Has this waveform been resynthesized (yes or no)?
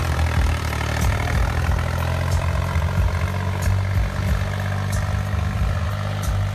no